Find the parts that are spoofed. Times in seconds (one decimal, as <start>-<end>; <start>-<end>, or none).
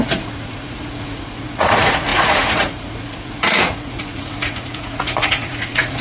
0.0-6.0